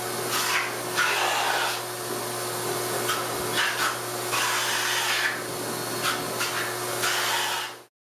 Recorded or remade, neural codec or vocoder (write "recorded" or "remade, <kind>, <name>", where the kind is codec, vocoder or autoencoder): recorded